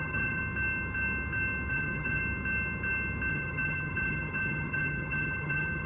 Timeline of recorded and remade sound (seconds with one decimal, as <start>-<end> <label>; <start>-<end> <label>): 0.0-0.4 remade; 0.4-1.7 recorded; 1.7-2.2 remade; 2.2-3.3 recorded; 3.3-5.9 remade